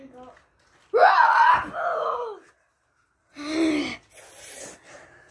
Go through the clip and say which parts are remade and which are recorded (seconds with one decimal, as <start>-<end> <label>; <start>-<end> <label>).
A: 0.0-5.3 recorded